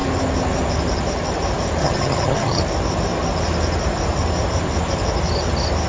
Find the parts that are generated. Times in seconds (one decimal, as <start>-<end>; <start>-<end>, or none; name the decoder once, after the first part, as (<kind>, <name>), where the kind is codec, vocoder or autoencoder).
1.8-2.6 (vocoder, HiFi-GAN)